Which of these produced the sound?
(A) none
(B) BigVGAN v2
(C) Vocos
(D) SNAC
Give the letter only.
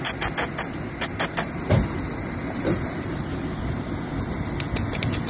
B